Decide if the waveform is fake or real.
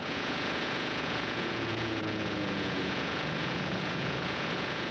fake